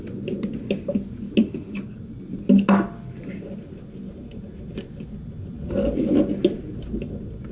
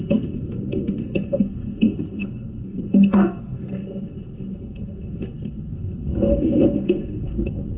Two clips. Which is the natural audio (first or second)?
first